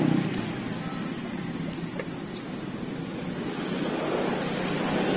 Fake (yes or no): no